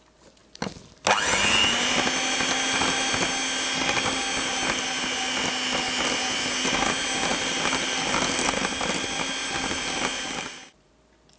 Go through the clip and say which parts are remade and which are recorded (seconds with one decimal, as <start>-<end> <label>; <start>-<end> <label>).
0.0-7.3 recorded; 7.3-8.7 remade; 8.7-9.4 recorded; 9.4-10.9 remade; 10.9-11.4 recorded